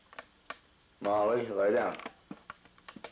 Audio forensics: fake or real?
real